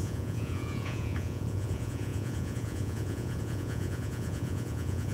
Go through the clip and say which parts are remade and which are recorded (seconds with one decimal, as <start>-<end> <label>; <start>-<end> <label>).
0.0-5.1 remade